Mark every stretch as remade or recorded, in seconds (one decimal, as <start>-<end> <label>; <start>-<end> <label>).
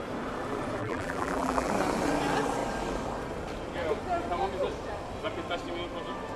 0.0-0.8 recorded; 0.8-1.7 remade; 1.7-6.4 recorded